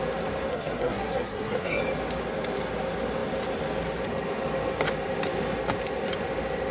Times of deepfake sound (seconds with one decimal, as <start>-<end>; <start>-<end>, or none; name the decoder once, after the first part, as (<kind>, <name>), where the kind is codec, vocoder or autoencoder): 0.5-1.8 (codec, SNAC)